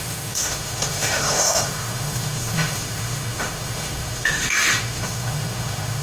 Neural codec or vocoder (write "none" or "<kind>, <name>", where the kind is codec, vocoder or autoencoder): autoencoder, DAC-VAE